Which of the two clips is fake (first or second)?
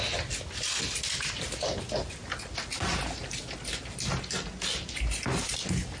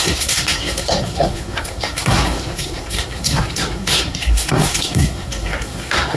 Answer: second